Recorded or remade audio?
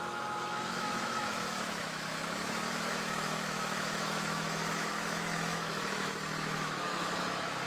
remade